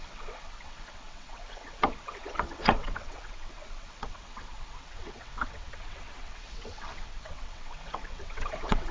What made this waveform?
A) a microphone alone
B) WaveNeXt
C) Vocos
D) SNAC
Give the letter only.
B